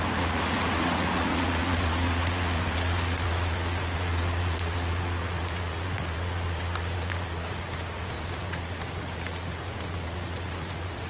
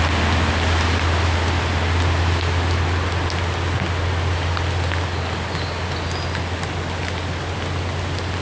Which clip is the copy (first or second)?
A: first